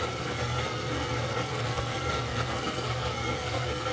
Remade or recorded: remade